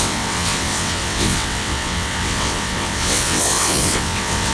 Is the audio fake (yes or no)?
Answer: yes